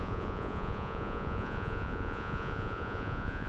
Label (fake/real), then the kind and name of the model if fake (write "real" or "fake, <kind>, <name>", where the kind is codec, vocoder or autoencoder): fake, vocoder, Vocos